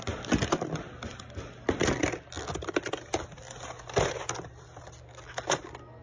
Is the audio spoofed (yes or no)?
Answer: no